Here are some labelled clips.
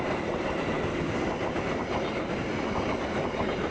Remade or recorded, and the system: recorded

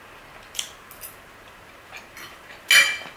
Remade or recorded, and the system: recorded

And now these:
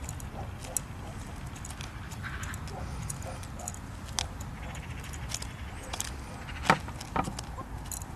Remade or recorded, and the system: recorded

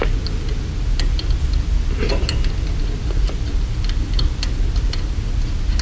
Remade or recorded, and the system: recorded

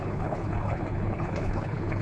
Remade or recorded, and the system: remade, codec, HILCodec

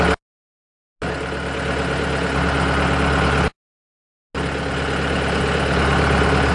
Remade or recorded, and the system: recorded